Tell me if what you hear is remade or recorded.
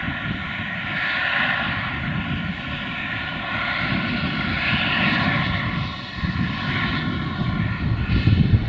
recorded